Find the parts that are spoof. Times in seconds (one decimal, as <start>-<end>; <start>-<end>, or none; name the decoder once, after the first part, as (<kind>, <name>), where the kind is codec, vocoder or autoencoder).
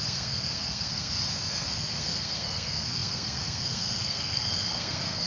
0.0-5.3 (codec, SNAC)